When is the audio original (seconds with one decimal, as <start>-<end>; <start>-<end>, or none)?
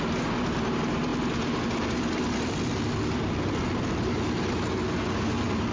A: 0.0-5.7